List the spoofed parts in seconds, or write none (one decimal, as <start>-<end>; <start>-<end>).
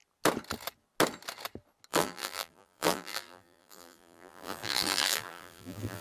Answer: 1.9-6.0